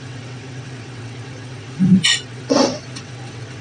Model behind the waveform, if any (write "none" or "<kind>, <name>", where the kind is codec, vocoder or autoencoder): vocoder, WaveNeXt